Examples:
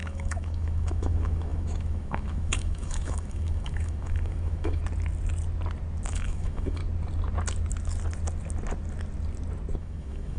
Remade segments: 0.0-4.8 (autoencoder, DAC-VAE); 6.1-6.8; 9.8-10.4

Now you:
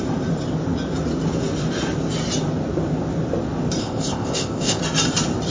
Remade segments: 3.8-4.8 (codec, ZipCodec)

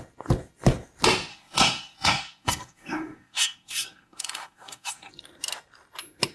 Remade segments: 1.3-5.1 (codec, SNAC)